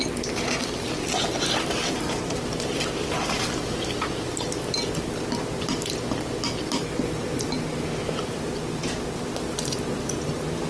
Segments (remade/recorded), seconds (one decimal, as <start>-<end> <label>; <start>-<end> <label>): 0.0-10.7 recorded